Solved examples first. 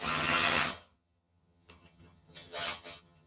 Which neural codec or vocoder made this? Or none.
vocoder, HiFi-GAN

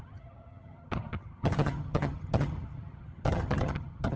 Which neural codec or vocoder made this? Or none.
vocoder, HiFi-GAN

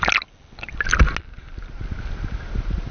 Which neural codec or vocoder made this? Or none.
none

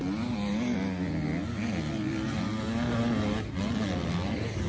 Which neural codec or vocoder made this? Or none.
none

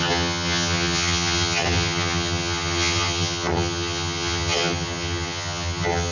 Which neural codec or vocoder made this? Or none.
vocoder, HiFi-GAN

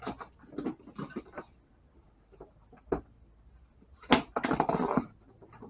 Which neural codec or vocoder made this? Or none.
none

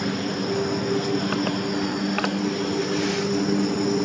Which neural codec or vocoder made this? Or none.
none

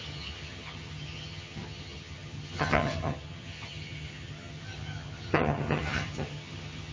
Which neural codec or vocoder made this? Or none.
vocoder, HiFi-GAN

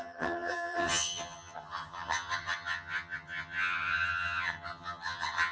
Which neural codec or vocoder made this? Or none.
vocoder, HiFi-GAN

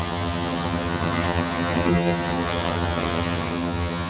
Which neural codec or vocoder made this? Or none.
vocoder, HiFi-GAN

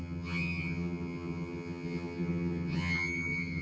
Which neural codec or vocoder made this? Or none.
vocoder, HiFi-GAN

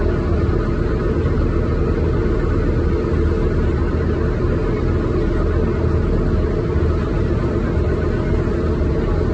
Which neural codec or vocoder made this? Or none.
none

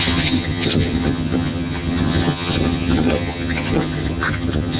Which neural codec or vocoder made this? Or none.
vocoder, HiFi-GAN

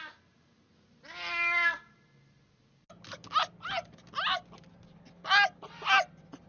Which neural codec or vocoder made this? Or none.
none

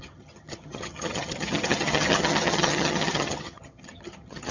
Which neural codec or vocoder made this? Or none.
vocoder, HiFi-GAN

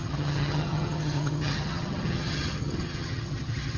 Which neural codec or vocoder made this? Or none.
vocoder, HiFi-GAN